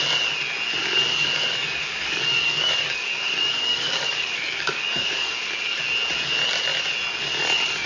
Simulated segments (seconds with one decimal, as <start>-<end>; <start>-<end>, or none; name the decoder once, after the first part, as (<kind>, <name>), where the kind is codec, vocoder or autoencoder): 1.1-5.8 (codec, DAC)